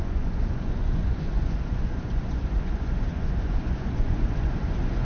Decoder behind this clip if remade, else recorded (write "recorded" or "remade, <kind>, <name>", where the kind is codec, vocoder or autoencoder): remade, vocoder, Vocos